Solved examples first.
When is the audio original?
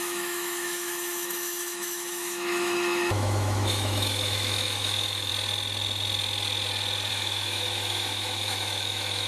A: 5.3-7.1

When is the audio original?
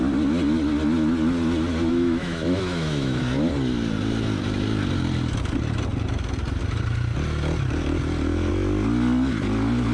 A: 0.0-1.9; 3.2-9.9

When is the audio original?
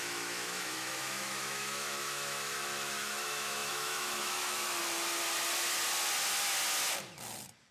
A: 4.8-7.7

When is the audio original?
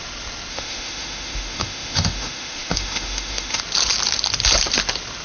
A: 0.0-0.5; 3.6-5.2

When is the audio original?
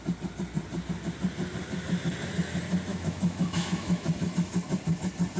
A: 0.0-2.9; 4.1-5.4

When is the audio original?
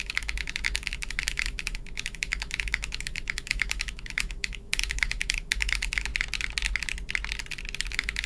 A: 6.1-7.9